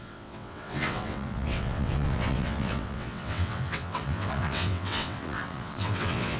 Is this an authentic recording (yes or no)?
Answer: no